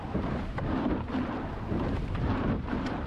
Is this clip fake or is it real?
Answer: fake